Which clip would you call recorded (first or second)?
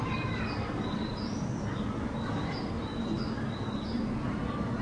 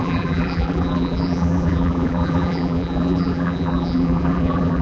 first